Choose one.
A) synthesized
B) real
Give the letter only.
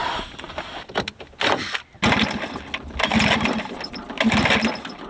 B